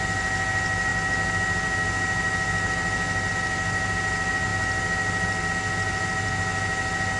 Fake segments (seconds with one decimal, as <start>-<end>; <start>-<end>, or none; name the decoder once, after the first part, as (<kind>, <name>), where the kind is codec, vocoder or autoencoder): none